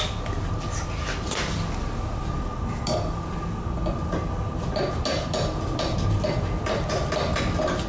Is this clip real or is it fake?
real